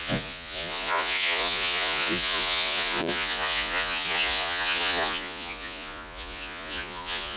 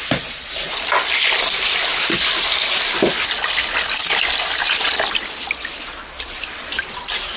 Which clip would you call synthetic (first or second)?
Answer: first